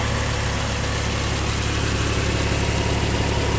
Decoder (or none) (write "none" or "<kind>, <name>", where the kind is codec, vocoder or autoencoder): none